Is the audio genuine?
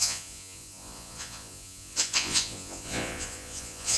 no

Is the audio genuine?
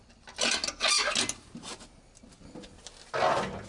yes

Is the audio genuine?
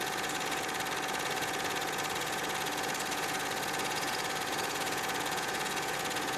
no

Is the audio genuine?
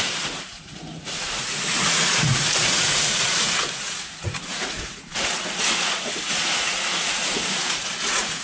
no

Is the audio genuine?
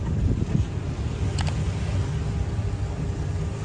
yes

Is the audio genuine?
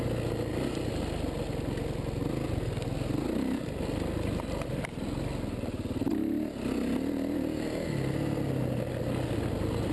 yes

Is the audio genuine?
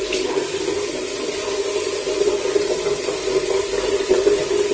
yes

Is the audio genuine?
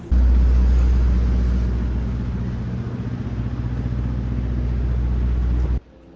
yes